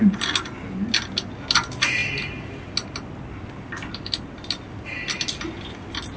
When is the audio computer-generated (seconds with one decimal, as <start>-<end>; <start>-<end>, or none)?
none